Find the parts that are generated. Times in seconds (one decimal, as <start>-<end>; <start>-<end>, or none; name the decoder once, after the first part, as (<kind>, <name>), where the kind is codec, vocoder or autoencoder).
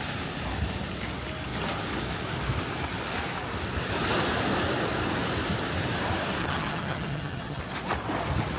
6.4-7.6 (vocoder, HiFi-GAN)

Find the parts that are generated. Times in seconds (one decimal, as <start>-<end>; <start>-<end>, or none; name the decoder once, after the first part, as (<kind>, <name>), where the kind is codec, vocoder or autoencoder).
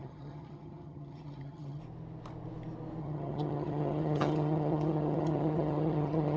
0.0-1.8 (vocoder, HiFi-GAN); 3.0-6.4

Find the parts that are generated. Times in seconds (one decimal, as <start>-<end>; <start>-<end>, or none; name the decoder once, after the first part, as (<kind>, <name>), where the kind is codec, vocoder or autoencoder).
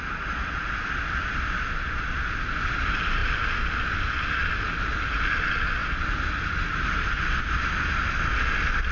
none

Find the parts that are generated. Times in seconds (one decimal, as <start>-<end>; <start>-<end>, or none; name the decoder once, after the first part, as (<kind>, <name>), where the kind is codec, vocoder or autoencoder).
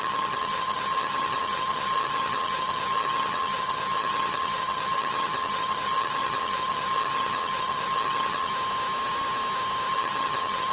0.0-8.5 (vocoder, HiFi-GAN); 9.9-10.7